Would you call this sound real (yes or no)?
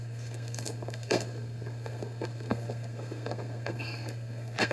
no